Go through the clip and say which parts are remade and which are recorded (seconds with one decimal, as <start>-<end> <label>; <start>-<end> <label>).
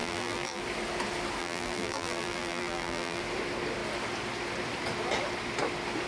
0.0-0.6 remade; 0.6-1.4 recorded; 1.4-3.2 remade; 3.2-6.1 recorded